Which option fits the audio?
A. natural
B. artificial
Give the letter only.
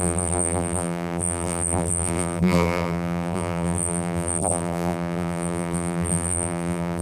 B